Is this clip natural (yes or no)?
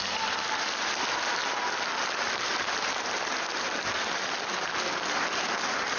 yes